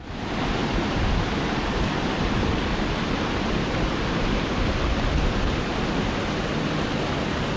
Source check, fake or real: real